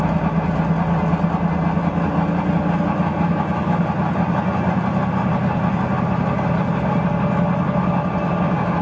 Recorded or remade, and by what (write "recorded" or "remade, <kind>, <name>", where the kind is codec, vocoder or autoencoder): recorded